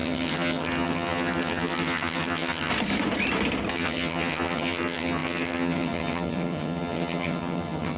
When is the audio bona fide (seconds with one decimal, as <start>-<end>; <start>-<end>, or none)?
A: 2.7-3.7